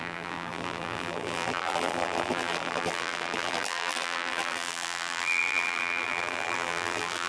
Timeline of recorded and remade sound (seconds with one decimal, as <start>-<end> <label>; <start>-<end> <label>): 0.0-7.3 remade